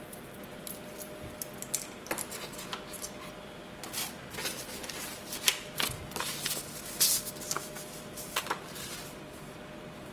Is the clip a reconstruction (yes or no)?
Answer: no